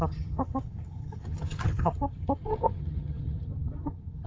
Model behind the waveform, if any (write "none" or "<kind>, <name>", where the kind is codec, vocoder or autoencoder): vocoder, HiFi-GAN